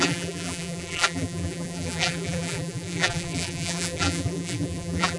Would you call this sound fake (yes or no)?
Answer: yes